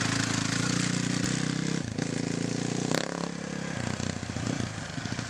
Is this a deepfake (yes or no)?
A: no